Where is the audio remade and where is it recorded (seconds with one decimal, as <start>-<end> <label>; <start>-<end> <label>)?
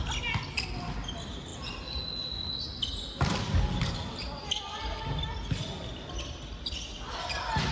0.0-7.7 recorded